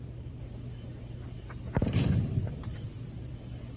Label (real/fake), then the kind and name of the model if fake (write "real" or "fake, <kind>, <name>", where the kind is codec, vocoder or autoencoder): real